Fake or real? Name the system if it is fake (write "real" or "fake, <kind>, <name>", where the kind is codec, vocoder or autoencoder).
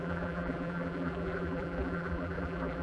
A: fake, vocoder, BigVGAN v2